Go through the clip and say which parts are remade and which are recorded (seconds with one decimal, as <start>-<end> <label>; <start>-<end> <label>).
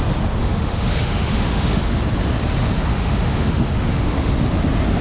0.0-0.4 recorded; 0.4-2.0 remade; 2.0-2.9 recorded; 2.9-4.3 remade; 4.3-5.0 recorded